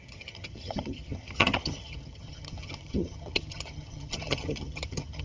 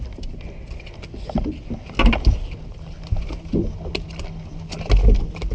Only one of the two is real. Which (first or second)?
second